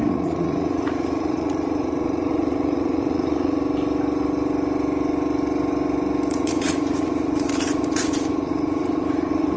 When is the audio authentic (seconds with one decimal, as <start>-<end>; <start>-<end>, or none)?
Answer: 3.6-6.3